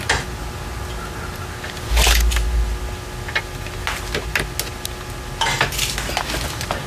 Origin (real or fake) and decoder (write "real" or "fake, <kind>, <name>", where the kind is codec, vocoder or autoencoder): real